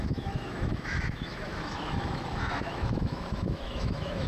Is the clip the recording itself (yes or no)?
no